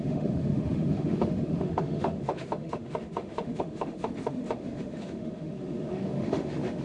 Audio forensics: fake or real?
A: fake